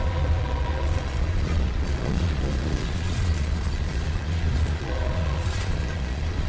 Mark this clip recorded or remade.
remade